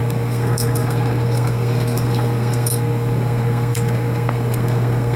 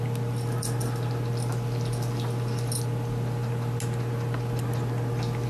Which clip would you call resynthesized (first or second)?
first